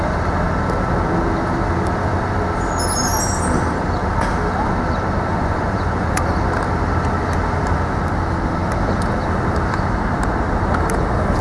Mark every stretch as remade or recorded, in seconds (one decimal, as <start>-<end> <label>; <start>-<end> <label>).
0.0-5.3 recorded; 5.3-6.2 remade; 6.2-11.4 recorded